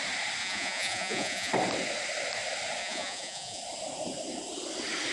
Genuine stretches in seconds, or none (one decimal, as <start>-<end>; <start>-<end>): 0.0-0.4; 1.5-2.8; 3.6-5.1

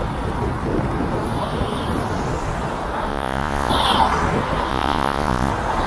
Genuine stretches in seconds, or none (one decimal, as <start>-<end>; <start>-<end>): 0.0-3.1; 3.7-4.7; 5.5-5.9